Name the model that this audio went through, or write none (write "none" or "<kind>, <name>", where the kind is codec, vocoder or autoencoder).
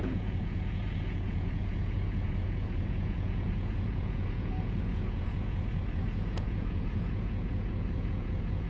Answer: vocoder, Vocos